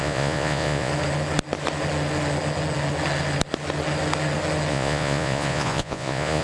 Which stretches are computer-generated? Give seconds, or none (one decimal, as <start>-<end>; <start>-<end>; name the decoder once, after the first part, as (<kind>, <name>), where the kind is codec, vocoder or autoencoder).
0.0-0.9 (vocoder, Vocos); 4.7-6.4